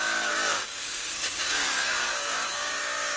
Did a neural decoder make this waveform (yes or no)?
yes